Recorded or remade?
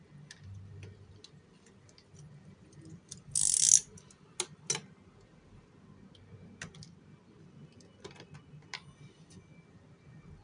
recorded